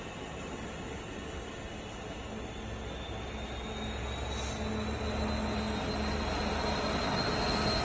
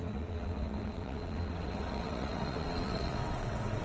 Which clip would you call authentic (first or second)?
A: first